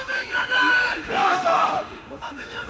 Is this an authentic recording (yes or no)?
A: no